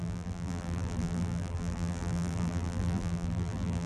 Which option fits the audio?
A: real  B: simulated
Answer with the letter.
B